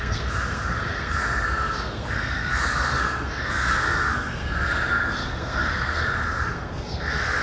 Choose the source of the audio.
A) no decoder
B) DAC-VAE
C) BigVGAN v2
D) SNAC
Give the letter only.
D